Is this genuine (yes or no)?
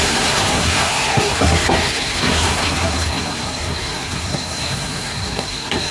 no